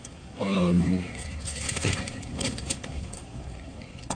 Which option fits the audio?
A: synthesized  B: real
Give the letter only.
A